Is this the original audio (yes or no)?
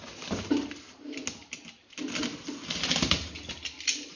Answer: yes